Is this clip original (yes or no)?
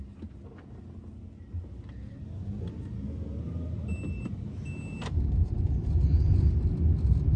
yes